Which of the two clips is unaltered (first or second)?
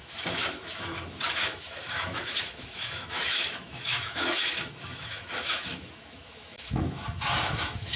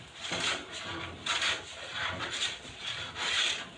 second